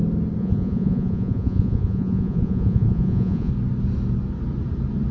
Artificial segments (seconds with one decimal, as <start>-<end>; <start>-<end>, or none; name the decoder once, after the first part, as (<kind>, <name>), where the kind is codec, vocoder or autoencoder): 0.4-3.5 (vocoder, Vocos)